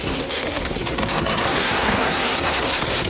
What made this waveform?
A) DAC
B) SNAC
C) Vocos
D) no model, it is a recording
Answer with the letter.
B